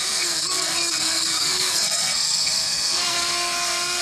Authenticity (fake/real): fake